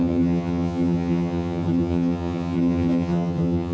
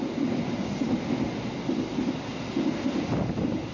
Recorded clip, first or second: second